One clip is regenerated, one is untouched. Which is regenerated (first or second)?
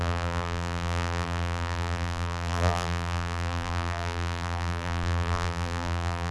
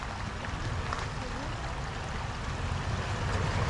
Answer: first